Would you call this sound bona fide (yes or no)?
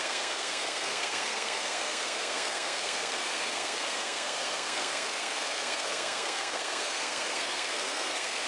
no